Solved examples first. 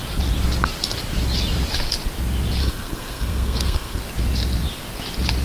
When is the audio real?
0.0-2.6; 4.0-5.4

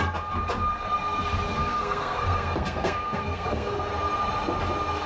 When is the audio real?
0.0-1.6; 3.9-5.1

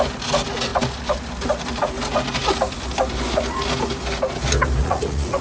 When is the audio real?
0.0-4.8

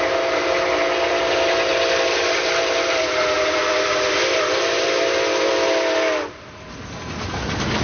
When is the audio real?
0.0-1.7; 5.5-7.8

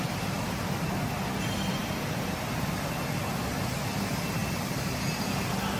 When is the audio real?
0.0-5.8

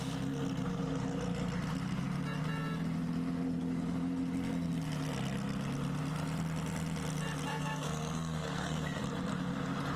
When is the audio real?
0.0-7.5; 9.0-10.0

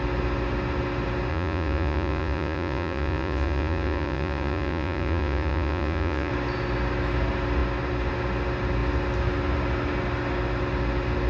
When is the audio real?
0.0-1.3; 6.3-11.3